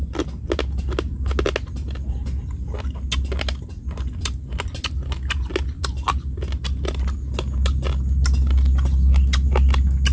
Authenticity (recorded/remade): recorded